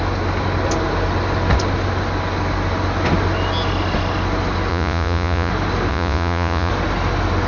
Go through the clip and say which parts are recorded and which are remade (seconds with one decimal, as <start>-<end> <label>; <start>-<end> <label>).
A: 0.0-4.7 recorded; 4.7-5.5 remade; 5.5-5.9 recorded; 5.9-6.7 remade; 6.7-7.5 recorded